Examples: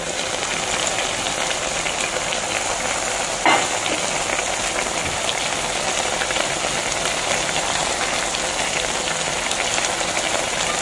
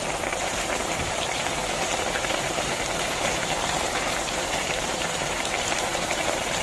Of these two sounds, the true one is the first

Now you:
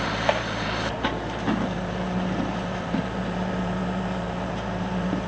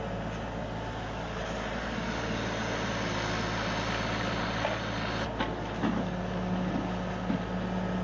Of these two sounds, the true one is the second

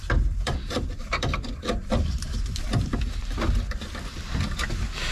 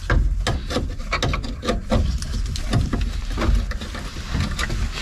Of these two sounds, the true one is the second